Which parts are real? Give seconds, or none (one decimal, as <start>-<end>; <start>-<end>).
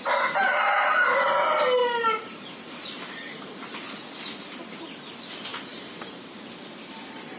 0.0-1.8; 3.4-5.5; 6.1-7.4